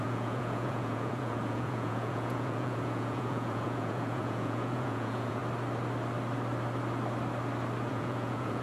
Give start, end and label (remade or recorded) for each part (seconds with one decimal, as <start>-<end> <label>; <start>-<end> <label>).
0.0-5.4 remade; 5.4-7.9 recorded; 7.9-8.6 remade